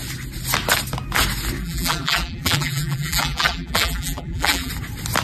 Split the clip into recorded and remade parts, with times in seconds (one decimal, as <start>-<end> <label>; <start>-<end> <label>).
0.0-1.6 recorded; 1.6-4.7 remade; 4.7-5.2 recorded